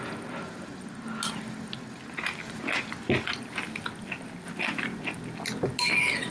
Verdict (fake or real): real